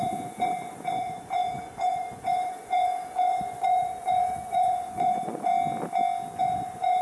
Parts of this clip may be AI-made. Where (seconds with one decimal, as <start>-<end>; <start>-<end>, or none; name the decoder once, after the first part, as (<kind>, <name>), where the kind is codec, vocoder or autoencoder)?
0.0-5.5 (vocoder, Vocos); 6.4-7.0